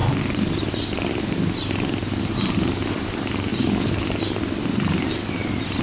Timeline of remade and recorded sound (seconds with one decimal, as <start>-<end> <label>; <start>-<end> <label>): 0.0-3.5 remade; 3.5-4.2 recorded; 4.2-5.8 remade

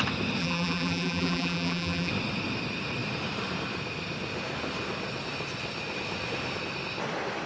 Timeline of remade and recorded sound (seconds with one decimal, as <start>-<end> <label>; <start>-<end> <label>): 0.0-0.4 recorded; 0.4-2.1 remade; 2.1-7.5 recorded

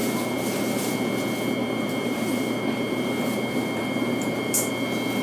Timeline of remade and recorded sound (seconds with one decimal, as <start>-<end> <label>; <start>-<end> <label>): 0.0-0.9 remade; 0.9-1.6 recorded; 1.6-4.7 remade; 4.7-5.2 recorded

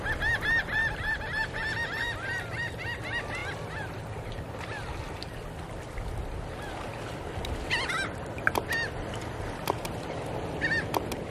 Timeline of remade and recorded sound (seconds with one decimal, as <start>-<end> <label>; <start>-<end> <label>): 0.0-0.8 recorded; 0.8-3.0 remade; 3.0-3.4 recorded; 3.4-5.0 remade; 5.0-11.3 recorded

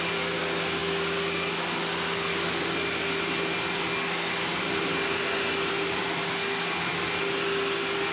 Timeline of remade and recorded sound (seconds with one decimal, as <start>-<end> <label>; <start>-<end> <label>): 0.0-8.1 recorded

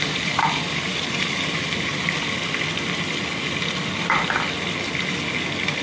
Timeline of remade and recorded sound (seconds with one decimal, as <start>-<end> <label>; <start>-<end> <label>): 0.0-1.9 remade; 1.9-5.8 recorded

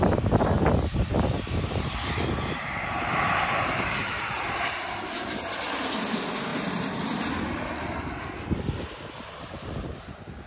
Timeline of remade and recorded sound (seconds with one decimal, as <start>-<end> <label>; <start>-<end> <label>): 0.0-0.9 recorded; 0.9-5.4 remade; 5.4-10.5 recorded

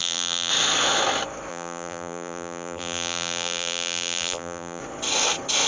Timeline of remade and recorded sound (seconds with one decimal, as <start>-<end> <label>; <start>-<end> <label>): 0.0-0.5 remade; 0.5-1.5 recorded; 1.5-4.8 remade; 4.8-5.7 recorded